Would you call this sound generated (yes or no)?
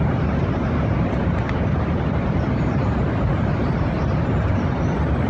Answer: yes